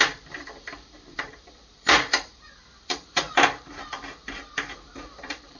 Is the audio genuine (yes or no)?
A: no